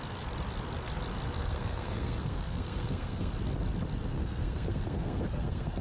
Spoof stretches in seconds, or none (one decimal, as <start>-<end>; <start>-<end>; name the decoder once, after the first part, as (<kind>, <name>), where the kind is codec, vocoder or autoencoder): 1.4-3.3 (codec, SNAC); 4.1-5.8